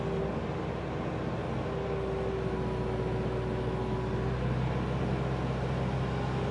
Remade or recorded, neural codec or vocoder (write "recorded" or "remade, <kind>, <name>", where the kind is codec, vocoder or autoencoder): recorded